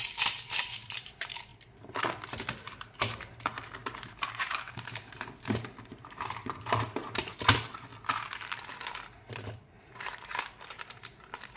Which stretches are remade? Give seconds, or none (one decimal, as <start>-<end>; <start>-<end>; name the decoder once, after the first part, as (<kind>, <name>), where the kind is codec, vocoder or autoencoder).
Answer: 0.0-1.5 (vocoder, BigVGAN v2); 2.5-7.9; 9.2-11.6

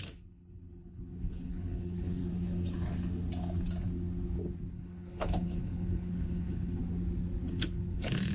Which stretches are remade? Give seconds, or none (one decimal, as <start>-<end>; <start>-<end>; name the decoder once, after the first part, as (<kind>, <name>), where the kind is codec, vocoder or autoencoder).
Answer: 0.0-2.2 (codec, HILCodec); 4.7-6.8; 7.5-8.3

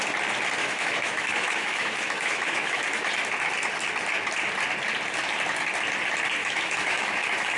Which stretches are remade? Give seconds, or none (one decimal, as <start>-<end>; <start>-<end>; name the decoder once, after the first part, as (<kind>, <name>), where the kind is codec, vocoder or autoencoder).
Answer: 0.6-3.1 (autoencoder, DAC-VAE); 6.4-7.6

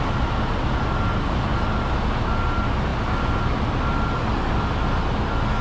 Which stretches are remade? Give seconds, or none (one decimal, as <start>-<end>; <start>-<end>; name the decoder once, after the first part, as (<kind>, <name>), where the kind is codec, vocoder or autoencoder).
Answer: none

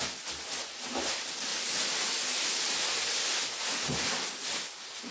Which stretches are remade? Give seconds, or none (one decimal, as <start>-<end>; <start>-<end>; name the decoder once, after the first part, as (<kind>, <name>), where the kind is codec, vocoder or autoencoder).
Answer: none